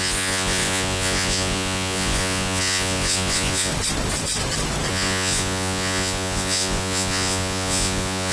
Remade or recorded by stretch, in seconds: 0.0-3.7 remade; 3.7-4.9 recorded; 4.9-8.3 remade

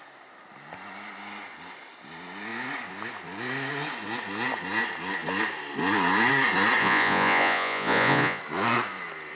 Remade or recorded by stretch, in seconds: 0.0-6.8 recorded; 6.8-8.4 remade; 8.4-9.3 recorded

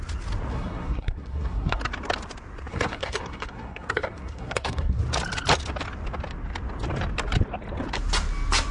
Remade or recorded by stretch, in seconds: 0.0-0.5 recorded; 0.5-1.8 remade; 1.8-2.7 recorded; 2.7-5.0 remade; 5.0-8.7 recorded

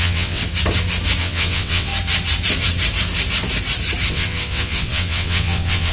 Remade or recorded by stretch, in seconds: 0.0-0.4 remade; 0.4-1.2 recorded; 1.2-1.9 remade; 1.9-4.1 recorded; 4.1-5.9 remade

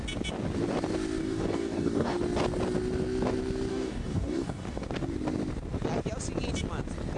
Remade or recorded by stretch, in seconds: 0.0-1.2 recorded; 1.2-2.2 remade; 2.2-3.7 recorded; 3.7-4.9 remade; 4.9-7.2 recorded

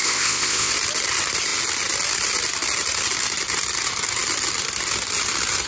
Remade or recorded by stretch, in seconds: 0.0-0.7 remade; 0.7-5.7 recorded

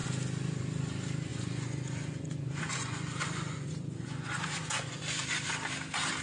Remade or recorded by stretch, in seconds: 0.0-1.3 recorded; 1.3-5.0 remade; 5.0-6.2 recorded